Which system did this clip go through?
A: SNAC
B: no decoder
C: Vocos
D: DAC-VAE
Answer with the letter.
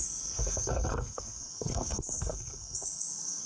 A